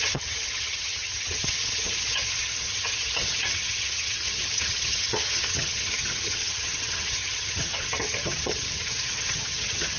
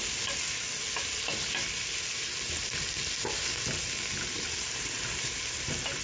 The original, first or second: second